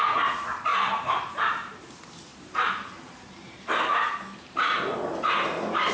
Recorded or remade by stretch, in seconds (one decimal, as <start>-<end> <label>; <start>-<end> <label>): 0.0-0.7 recorded; 0.7-1.8 remade; 1.8-2.3 recorded; 2.3-5.9 remade